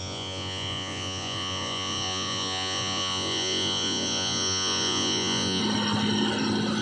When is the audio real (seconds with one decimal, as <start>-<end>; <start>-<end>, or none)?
5.6-6.8

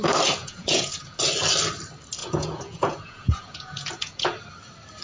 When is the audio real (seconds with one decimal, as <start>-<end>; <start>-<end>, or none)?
0.0-0.4; 1.2-2.2; 4.4-5.0

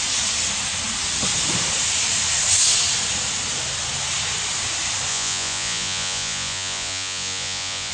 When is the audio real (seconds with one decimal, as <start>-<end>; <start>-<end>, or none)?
0.0-5.1

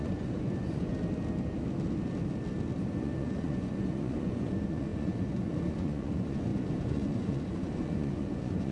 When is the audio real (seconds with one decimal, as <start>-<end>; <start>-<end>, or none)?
0.9-2.8

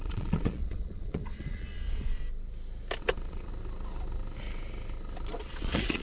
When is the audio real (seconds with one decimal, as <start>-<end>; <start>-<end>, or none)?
2.2-3.0; 3.5-5.4

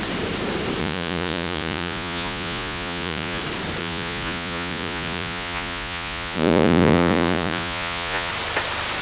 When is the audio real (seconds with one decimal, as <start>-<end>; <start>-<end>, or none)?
0.0-0.8; 3.4-3.8; 8.3-9.0

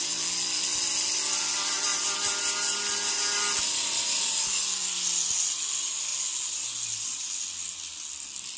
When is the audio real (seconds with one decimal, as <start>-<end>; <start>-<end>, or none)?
0.0-8.6

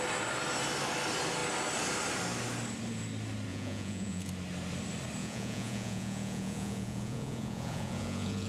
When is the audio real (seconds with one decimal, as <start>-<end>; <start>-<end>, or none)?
0.0-3.5; 4.3-5.2